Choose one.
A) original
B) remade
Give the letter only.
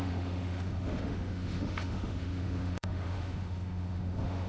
B